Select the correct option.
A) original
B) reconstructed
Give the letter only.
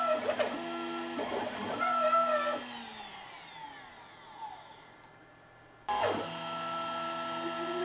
A